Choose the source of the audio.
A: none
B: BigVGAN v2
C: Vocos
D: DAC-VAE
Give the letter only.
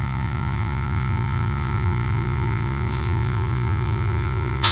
C